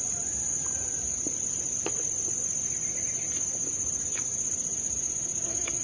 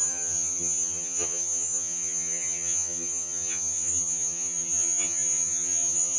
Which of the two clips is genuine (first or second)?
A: first